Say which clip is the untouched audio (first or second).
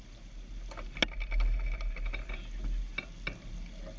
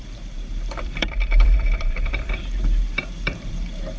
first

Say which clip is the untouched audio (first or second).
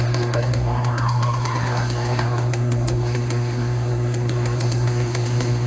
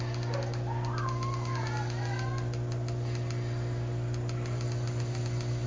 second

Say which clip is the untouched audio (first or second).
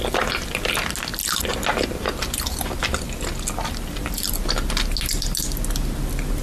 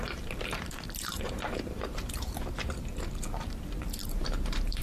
first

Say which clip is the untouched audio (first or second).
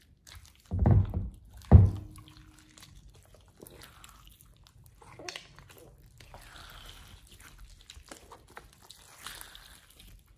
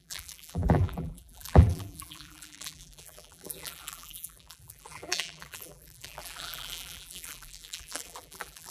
first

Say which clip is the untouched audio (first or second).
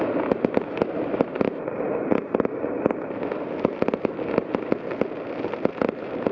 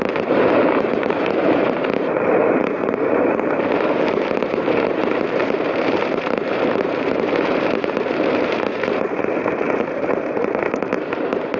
first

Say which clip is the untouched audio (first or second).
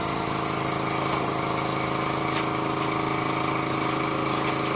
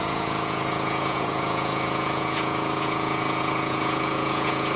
first